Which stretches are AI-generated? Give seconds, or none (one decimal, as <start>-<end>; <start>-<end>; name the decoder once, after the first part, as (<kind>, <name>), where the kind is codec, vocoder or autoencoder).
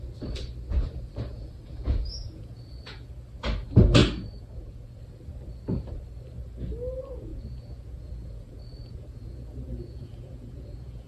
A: 1.3-3.1 (vocoder, Vocos); 4.0-5.0; 7.3-11.1